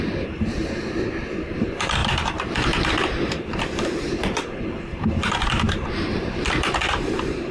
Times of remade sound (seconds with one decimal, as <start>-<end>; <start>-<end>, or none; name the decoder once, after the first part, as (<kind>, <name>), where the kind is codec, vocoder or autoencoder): 0.0-0.6 (vocoder, BigVGAN v2); 1.1-7.5